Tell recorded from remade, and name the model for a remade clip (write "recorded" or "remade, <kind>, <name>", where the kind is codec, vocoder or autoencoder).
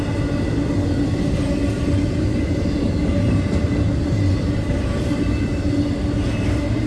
recorded